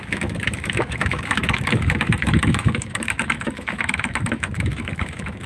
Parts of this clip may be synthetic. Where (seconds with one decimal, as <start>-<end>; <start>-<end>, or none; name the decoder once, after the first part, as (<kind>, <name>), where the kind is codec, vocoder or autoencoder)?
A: 0.0-5.5 (autoencoder, DAC-VAE)